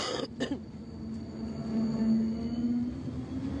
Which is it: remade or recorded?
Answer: recorded